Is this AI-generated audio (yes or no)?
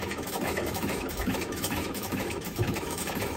yes